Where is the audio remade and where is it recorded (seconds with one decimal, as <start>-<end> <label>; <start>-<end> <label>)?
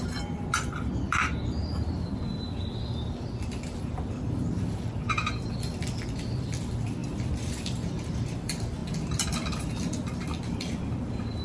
0.0-11.4 remade